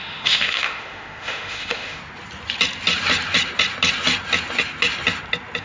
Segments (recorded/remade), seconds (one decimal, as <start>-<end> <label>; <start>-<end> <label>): 0.0-2.0 remade; 2.0-5.6 recorded